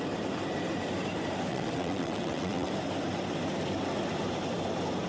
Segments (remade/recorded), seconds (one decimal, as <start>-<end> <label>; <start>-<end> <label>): 0.0-1.5 recorded; 1.5-2.7 remade; 2.7-5.1 recorded